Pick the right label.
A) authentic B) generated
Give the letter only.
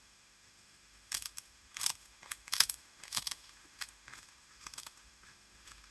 B